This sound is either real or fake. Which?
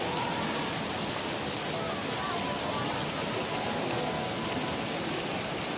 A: real